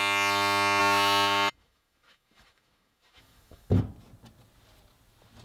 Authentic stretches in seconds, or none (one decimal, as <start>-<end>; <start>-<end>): 0.0-0.8; 3.8-5.4